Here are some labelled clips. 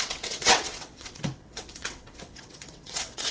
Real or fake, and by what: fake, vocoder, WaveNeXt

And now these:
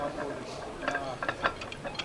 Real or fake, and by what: real